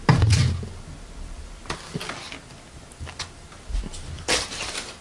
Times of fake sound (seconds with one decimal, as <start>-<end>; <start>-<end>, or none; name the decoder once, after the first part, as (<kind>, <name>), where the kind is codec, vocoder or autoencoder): none